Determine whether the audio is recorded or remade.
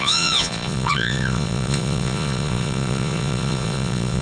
remade